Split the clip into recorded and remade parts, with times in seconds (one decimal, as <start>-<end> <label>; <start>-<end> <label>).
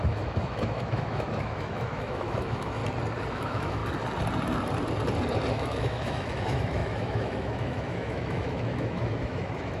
0.0-2.8 remade; 2.8-3.3 recorded; 3.3-3.8 remade; 3.8-5.5 recorded; 5.5-9.8 remade